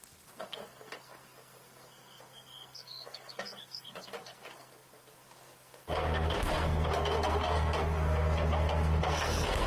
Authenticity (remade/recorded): remade